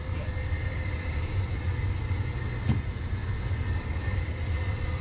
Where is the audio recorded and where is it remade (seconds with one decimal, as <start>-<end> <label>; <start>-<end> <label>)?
0.0-5.0 recorded